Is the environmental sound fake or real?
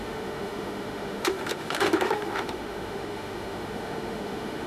fake